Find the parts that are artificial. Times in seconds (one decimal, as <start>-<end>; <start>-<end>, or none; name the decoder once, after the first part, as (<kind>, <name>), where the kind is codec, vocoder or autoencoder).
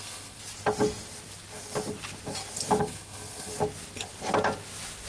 0.0-0.4 (codec, SNAC); 2.8-3.5